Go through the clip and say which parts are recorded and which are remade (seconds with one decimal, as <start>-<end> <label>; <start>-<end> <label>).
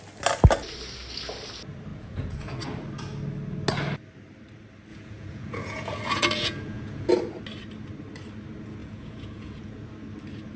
0.0-1.9 recorded; 1.9-2.6 remade; 2.6-4.9 recorded; 4.9-7.1 remade; 7.1-8.8 recorded; 8.8-9.9 remade; 9.9-10.6 recorded